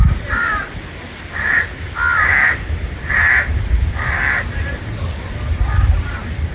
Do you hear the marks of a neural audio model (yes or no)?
no